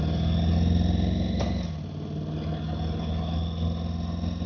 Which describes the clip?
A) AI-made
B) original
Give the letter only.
B